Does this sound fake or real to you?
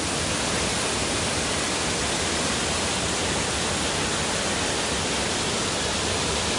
real